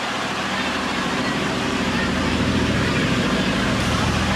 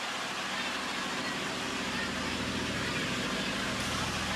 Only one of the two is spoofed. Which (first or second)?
first